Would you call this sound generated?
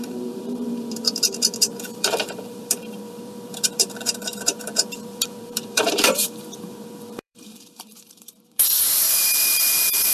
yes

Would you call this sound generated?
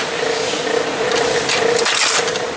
no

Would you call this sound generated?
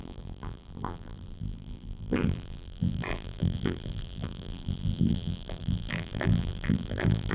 yes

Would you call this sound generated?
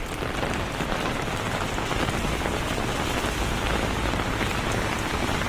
yes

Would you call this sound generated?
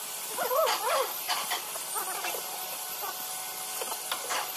no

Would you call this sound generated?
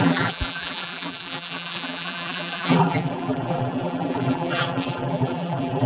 yes